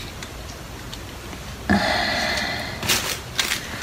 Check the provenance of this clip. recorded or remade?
recorded